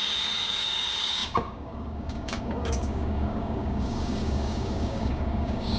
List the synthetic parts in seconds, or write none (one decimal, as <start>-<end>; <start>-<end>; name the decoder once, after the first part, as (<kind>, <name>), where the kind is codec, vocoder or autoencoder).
0.0-5.8 (codec, DAC)